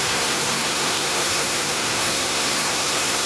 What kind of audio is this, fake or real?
fake